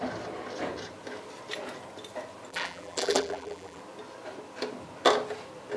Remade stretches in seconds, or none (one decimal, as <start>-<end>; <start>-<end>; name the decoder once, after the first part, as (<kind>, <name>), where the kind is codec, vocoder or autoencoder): 2.5-3.8 (vocoder, BigVGAN v2)